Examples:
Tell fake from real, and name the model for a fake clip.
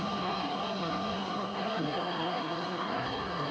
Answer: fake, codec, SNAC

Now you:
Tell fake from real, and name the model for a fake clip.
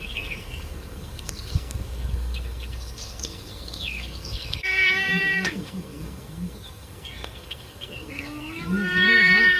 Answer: fake, codec, SNAC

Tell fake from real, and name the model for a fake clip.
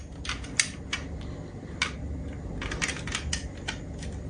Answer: real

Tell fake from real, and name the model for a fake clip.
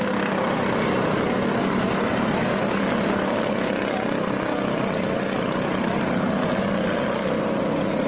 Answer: real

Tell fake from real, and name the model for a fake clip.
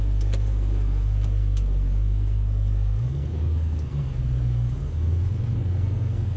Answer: fake, codec, SNAC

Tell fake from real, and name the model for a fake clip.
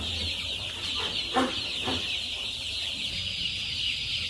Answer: real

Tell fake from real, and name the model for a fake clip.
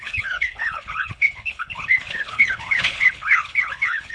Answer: fake, codec, HILCodec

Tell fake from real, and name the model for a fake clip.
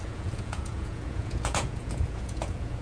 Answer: fake, vocoder, Vocos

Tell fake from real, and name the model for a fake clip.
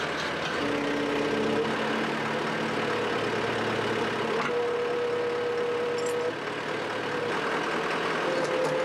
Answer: real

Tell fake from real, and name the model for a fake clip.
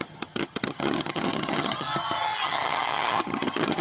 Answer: fake, vocoder, HiFi-GAN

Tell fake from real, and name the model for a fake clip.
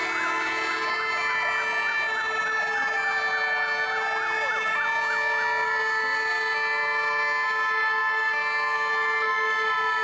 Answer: real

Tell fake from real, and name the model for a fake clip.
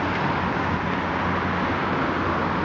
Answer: real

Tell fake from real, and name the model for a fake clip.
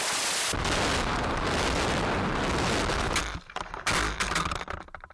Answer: real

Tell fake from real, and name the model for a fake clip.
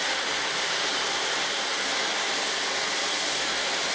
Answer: real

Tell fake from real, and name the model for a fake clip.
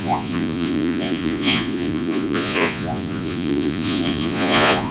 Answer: fake, vocoder, Vocos